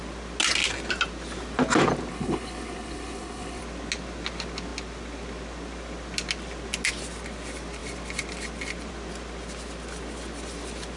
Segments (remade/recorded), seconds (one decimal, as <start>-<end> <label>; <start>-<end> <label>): 0.0-2.1 recorded; 2.1-3.6 remade; 3.6-11.0 recorded